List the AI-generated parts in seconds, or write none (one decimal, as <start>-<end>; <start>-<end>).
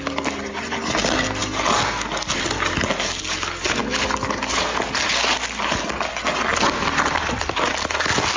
none